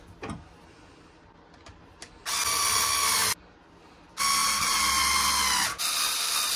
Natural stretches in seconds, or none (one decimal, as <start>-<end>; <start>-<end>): 0.0-4.4; 5.4-6.6